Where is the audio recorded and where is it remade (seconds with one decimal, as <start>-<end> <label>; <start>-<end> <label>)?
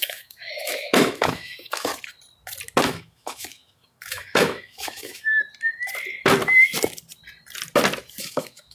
0.0-1.9 remade; 1.9-2.8 recorded; 2.8-5.3 remade; 5.3-8.2 recorded; 8.2-8.7 remade